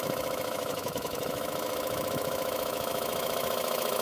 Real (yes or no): no